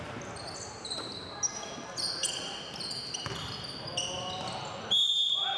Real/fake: real